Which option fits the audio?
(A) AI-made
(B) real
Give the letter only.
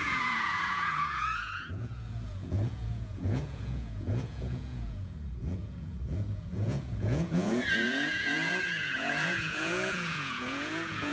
A